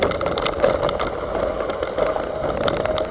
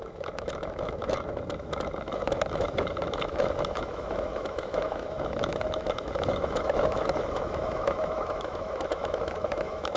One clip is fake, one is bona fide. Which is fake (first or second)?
second